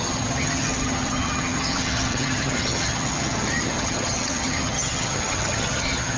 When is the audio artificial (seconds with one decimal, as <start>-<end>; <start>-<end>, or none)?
0.0-6.2